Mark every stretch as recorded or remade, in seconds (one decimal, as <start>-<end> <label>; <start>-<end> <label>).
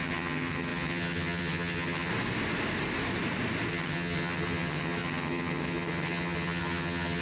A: 0.0-2.1 remade; 2.1-3.7 recorded; 3.7-7.2 remade